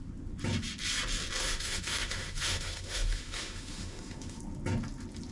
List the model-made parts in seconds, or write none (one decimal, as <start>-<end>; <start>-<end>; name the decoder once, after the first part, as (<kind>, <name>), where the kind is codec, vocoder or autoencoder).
1.4-4.4 (autoencoder, DAC-VAE)